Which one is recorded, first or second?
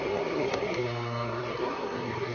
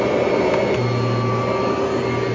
second